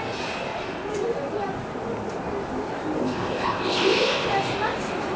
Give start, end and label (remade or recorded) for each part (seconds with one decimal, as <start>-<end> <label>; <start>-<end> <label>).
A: 0.0-3.0 recorded; 3.0-4.3 remade; 4.3-5.2 recorded